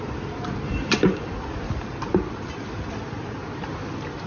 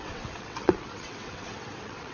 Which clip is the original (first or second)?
first